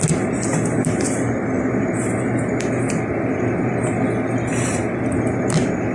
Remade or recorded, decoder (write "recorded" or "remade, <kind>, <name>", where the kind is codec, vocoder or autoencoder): recorded